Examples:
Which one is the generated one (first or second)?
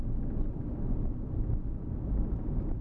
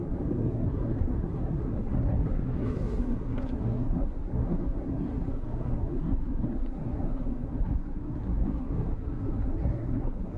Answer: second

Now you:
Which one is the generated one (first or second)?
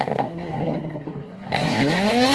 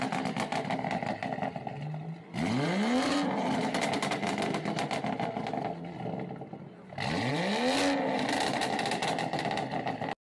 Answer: first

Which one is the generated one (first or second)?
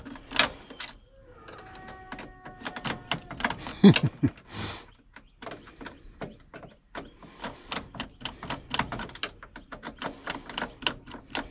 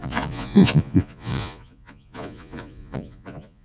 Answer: second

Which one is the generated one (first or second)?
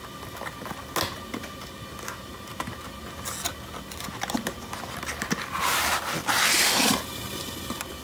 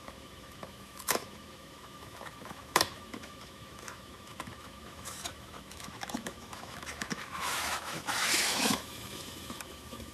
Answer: second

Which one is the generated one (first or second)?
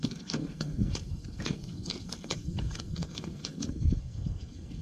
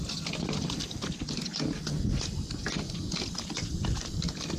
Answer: first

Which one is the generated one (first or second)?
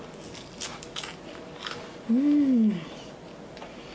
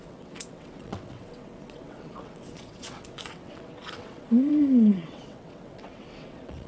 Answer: second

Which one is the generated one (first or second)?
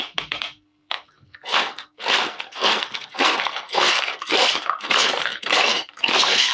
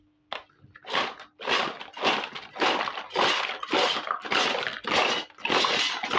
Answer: first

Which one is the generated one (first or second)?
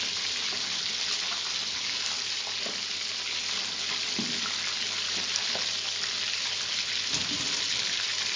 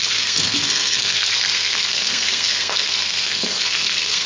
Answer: second